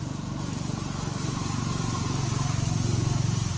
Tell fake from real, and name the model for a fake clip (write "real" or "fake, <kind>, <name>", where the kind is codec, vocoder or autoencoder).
real